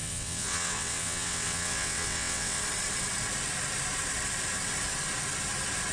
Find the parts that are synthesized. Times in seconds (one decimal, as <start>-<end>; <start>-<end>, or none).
0.0-2.6